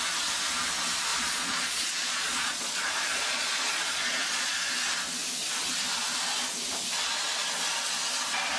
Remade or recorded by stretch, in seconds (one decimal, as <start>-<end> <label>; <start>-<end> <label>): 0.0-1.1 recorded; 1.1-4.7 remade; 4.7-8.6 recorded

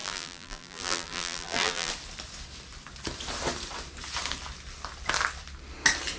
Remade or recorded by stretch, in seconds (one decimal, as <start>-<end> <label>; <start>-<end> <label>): 0.0-1.9 remade; 1.9-6.2 recorded

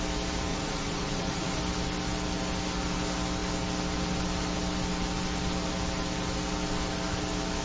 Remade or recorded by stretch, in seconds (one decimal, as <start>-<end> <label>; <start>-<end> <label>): 0.0-0.5 recorded; 0.5-1.6 remade; 1.6-7.6 recorded

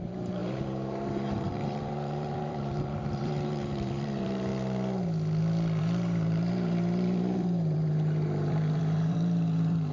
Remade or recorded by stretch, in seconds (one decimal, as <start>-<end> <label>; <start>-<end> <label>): 0.0-4.5 remade; 4.5-5.8 recorded; 5.8-9.9 remade

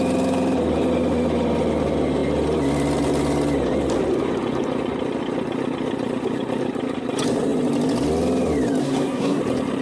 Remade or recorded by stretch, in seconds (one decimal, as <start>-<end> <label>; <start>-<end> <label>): 0.0-8.8 recorded; 8.8-9.4 remade; 9.4-9.8 recorded

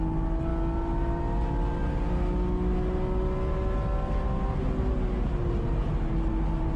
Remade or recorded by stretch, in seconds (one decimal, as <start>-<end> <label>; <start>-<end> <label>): 0.0-6.8 recorded

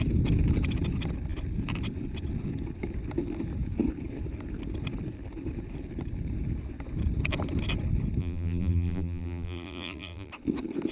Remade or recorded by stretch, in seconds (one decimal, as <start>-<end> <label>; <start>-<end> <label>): 0.0-8.2 recorded; 8.2-10.3 remade; 10.3-10.9 recorded

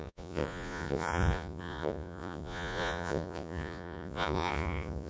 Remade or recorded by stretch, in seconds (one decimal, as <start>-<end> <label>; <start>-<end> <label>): 0.0-5.1 remade